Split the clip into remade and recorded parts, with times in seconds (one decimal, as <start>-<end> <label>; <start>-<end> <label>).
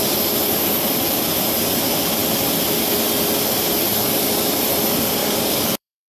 0.0-5.2 recorded; 5.2-6.1 remade